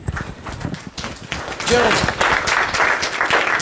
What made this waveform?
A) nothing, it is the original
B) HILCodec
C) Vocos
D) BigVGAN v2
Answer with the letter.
A